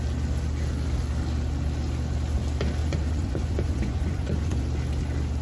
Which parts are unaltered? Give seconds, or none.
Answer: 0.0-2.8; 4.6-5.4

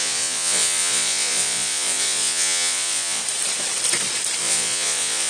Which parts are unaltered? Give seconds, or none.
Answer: 3.2-4.4

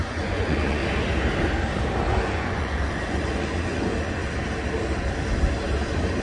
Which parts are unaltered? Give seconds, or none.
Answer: 0.8-2.1; 4.2-6.2

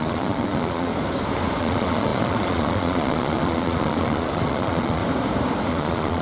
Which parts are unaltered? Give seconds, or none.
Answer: 0.9-1.6; 5.0-5.7

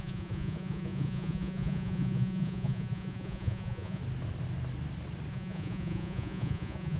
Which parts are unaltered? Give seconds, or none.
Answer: 4.0-5.3